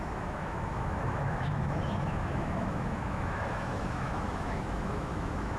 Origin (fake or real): fake